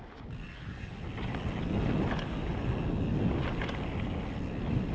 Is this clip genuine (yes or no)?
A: yes